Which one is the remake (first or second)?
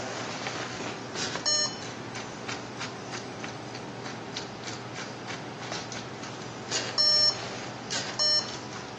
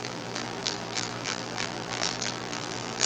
second